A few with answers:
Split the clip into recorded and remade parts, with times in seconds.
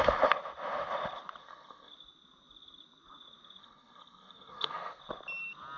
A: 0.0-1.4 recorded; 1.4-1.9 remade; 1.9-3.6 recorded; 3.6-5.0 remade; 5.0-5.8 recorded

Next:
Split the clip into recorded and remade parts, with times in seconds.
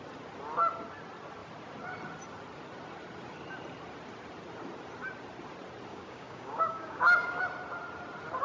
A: 0.0-5.9 recorded; 5.9-7.4 remade; 7.4-8.4 recorded